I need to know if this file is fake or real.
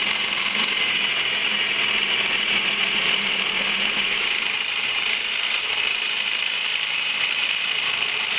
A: fake